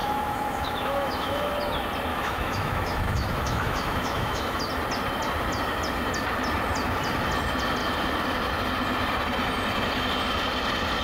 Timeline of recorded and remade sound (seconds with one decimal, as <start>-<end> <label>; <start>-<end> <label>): 0.0-1.5 remade; 1.5-2.1 recorded; 2.1-4.6 remade; 4.6-11.0 recorded